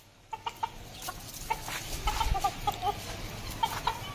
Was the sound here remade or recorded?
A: recorded